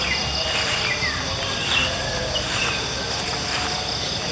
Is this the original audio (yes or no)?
yes